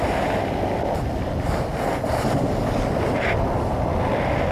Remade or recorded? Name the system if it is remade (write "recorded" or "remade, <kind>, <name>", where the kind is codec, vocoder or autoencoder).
recorded